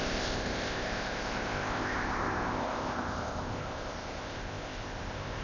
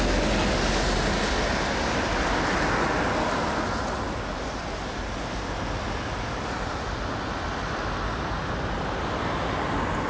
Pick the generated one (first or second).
first